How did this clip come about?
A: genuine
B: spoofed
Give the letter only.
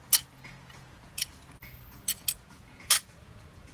B